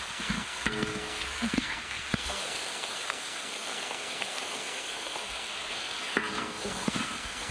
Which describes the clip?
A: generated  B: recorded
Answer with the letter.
A